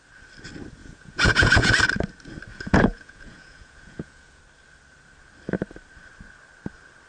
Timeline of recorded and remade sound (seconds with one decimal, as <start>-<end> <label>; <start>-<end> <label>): 0.0-0.8 recorded; 0.8-1.7 remade; 1.7-2.5 recorded; 2.5-4.4 remade; 4.4-7.1 recorded